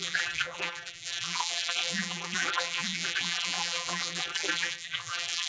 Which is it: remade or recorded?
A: remade